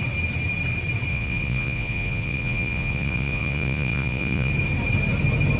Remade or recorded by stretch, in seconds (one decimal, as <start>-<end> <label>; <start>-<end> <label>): 0.0-1.1 recorded; 1.1-4.5 remade; 4.5-5.6 recorded